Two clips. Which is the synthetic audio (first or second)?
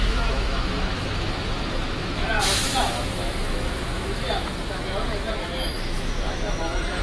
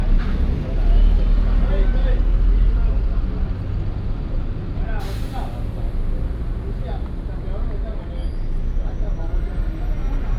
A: first